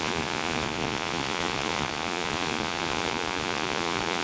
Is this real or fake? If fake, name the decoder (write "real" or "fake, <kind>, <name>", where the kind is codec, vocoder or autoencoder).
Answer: fake, vocoder, Vocos